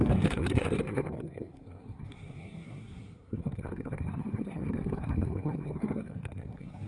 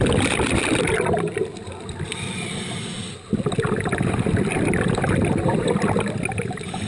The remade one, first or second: first